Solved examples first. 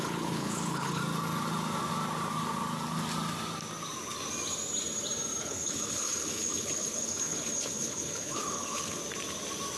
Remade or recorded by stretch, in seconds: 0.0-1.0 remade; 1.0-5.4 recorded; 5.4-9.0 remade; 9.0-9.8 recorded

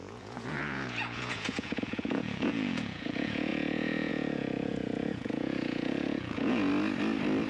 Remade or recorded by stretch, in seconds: 0.0-6.7 remade; 6.7-7.5 recorded

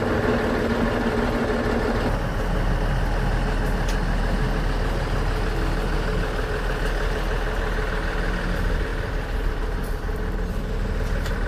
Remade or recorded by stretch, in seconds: 0.0-11.5 recorded

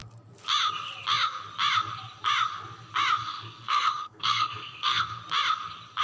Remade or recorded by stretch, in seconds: 0.0-3.2 recorded; 3.2-5.2 remade; 5.2-6.0 recorded